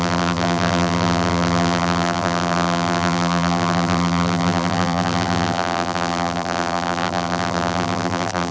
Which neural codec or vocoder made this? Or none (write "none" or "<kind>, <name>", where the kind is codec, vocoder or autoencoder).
vocoder, BigVGAN v2